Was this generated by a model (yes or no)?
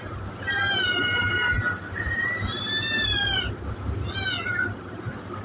yes